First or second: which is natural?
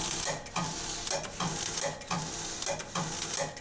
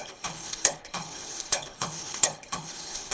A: first